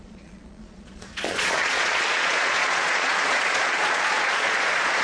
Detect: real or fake fake